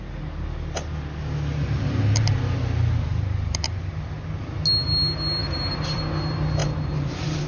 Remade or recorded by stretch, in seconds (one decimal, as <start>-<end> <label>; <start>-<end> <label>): 0.0-1.5 recorded; 1.5-2.3 remade; 2.3-3.1 recorded; 3.1-3.8 remade; 3.8-5.4 recorded; 5.4-6.0 remade; 6.0-6.6 recorded; 6.6-7.5 remade